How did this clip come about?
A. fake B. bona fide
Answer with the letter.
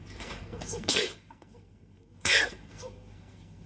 A